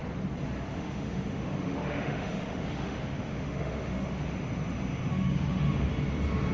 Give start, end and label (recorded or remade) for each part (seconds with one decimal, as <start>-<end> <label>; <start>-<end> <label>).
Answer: 0.0-0.7 recorded; 0.7-4.2 remade; 4.2-5.1 recorded; 5.1-5.9 remade; 5.9-6.5 recorded